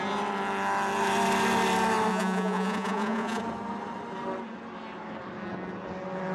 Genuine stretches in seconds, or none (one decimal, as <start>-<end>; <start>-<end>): 0.0-2.1; 3.4-6.3